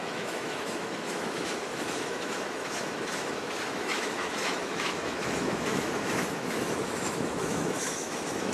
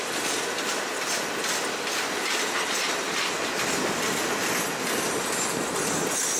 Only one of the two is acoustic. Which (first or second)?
second